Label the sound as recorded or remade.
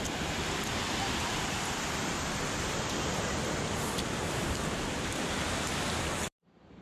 remade